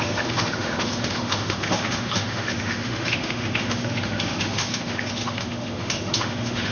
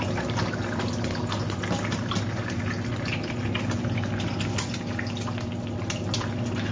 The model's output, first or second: first